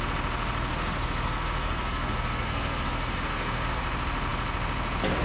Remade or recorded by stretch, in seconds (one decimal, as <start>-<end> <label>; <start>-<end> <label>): 0.0-0.7 recorded; 0.7-3.8 remade; 3.8-5.2 recorded